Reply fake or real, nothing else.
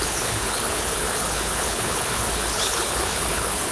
fake